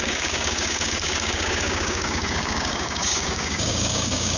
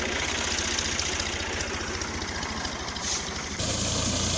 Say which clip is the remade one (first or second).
first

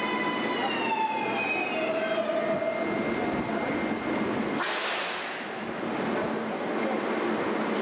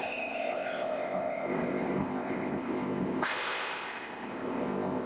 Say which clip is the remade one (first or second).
second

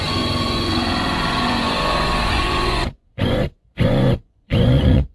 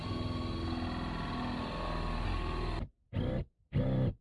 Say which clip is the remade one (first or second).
first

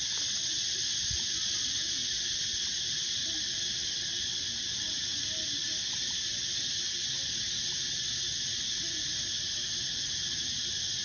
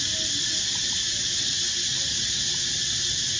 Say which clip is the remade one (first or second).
first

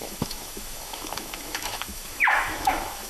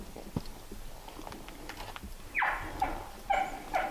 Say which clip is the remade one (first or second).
first